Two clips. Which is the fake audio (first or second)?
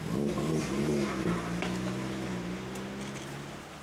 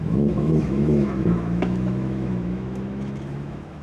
second